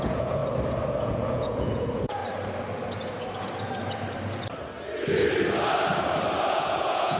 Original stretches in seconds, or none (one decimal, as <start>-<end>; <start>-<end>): 0.4-1.0; 2.2-6.5